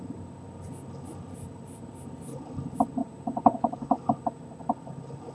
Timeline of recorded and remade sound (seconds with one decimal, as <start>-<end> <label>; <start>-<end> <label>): 0.0-3.0 recorded; 3.0-4.4 remade; 4.4-5.3 recorded